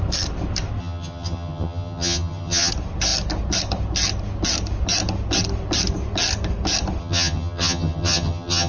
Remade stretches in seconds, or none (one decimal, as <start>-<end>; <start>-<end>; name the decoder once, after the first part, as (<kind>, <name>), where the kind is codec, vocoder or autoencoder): 0.8-2.7 (vocoder, HiFi-GAN); 7.0-8.7